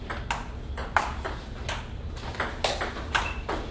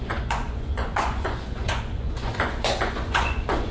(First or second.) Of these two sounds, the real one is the first